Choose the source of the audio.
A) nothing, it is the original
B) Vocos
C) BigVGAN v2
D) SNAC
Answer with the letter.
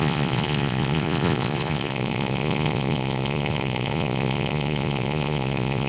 B